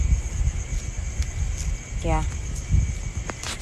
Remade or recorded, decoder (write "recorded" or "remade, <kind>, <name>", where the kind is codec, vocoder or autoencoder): recorded